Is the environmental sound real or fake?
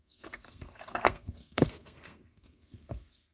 fake